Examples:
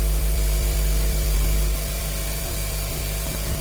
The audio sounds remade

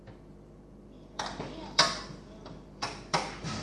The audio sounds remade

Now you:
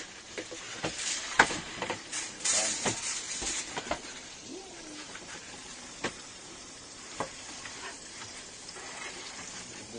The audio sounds remade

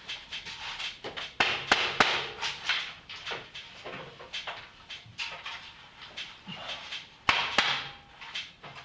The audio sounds recorded